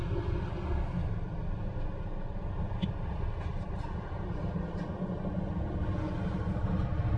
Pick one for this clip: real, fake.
real